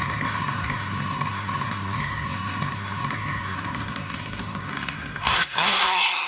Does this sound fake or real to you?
fake